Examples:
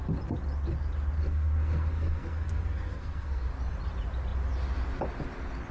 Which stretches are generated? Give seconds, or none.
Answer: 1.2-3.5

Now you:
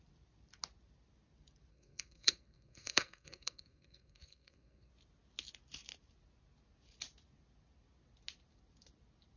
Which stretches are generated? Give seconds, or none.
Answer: 1.7-4.9

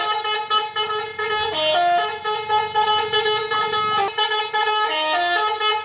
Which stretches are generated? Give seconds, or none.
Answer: none

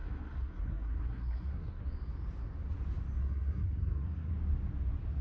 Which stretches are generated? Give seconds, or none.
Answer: 0.0-1.8; 3.2-4.3

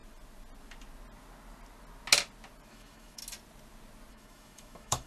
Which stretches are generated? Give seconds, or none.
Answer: 2.7-3.2; 4.1-5.1

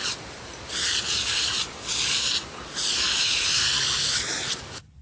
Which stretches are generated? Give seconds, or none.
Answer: 3.1-3.6